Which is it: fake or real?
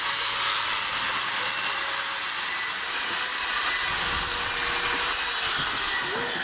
real